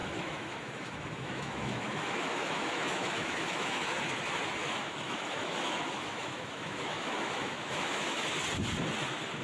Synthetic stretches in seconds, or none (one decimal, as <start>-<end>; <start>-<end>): 0.0-4.0; 4.6-8.3